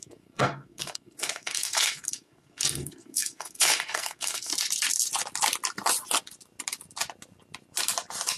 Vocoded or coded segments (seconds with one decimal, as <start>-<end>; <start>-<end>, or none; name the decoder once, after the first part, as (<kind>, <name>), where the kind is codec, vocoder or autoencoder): 0.0-4.5 (codec, SNAC)